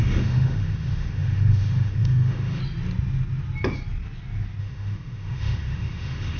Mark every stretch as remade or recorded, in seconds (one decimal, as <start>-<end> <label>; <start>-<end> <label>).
0.0-2.6 remade; 2.6-4.6 recorded; 4.6-6.4 remade